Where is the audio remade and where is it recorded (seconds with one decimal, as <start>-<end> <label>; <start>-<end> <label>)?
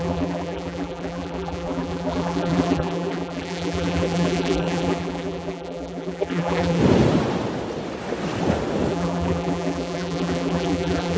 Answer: 0.0-6.8 remade; 6.8-8.9 recorded; 8.9-11.2 remade